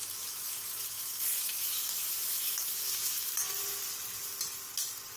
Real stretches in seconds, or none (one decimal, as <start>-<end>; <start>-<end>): 3.3-5.2